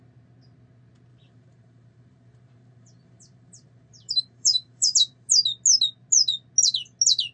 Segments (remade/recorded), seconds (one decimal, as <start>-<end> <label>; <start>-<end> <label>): 0.0-1.1 recorded; 1.1-5.3 remade; 5.3-7.3 recorded